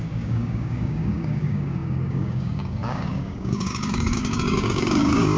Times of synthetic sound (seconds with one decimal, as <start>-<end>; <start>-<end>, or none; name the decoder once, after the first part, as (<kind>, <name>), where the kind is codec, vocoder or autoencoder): 0.0-5.4 (codec, DAC)